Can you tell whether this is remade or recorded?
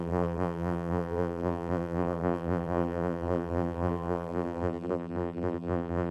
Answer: remade